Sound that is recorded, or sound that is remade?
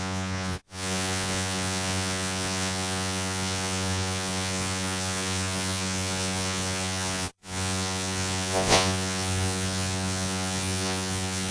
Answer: remade